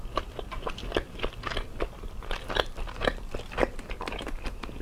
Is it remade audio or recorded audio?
recorded